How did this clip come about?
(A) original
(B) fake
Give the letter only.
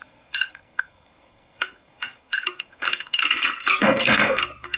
B